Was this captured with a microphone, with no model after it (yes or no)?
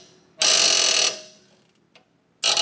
yes